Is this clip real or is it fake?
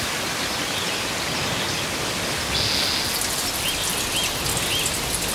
real